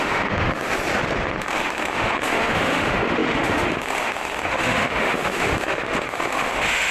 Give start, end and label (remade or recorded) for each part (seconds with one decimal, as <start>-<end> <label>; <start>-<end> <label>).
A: 0.0-0.8 remade; 0.8-1.4 recorded; 1.4-6.9 remade